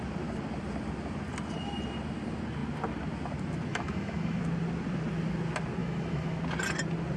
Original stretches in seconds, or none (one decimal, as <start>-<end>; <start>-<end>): 0.0-3.7; 4.4-5.8; 6.4-7.2

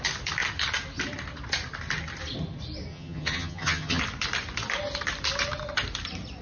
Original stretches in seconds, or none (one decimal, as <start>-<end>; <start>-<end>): 0.0-2.9; 4.0-6.4

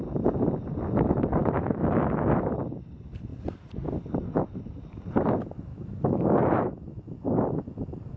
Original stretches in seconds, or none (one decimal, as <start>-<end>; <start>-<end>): 0.0-1.4; 2.6-5.7; 6.6-8.2